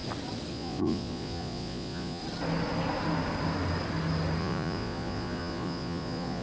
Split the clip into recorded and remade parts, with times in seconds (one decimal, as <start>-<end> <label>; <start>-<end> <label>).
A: 0.0-0.5 recorded; 0.5-2.2 remade; 2.2-4.4 recorded; 4.4-6.4 remade